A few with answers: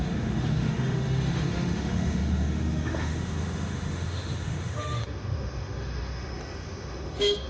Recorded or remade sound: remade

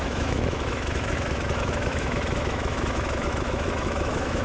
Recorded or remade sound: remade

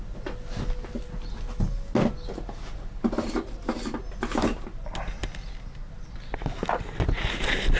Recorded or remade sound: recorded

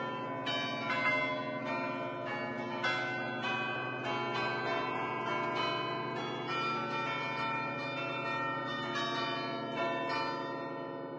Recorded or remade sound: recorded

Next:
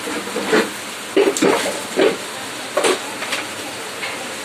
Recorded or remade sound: recorded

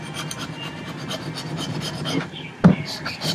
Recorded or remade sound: recorded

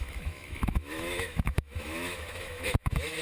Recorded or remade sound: remade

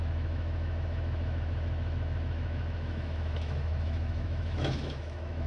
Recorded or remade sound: remade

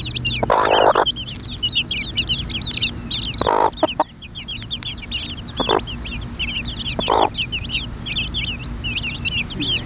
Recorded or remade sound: recorded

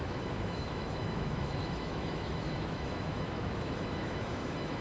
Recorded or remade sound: remade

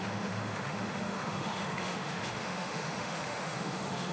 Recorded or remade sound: remade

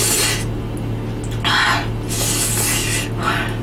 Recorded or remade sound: recorded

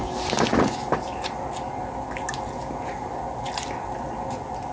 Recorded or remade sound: recorded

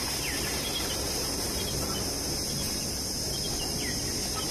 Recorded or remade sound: recorded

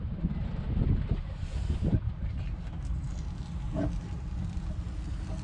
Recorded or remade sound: recorded